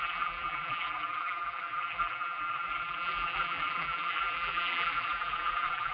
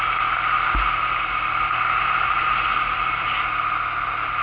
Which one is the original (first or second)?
second